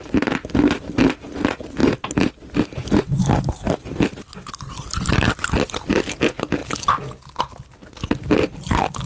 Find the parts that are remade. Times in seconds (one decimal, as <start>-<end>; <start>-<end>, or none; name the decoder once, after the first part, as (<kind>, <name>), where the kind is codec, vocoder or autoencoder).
none